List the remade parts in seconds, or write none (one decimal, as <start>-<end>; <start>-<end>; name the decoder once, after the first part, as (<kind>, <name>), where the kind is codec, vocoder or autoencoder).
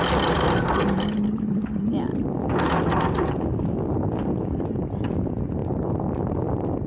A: none